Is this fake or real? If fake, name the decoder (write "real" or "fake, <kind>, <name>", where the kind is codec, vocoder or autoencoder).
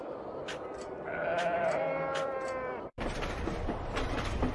fake, vocoder, BigVGAN v2